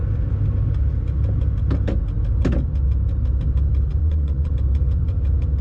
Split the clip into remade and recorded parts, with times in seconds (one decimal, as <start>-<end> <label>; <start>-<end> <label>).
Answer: 0.0-4.0 recorded; 4.0-4.5 remade; 4.5-5.6 recorded